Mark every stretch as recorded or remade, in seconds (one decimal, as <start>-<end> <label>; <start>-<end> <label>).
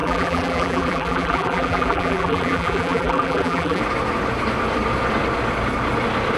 0.0-3.8 remade; 3.8-6.4 recorded